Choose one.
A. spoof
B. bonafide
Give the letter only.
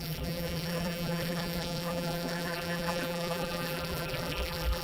A